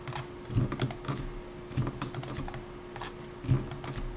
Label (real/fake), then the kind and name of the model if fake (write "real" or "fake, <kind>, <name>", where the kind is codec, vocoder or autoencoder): real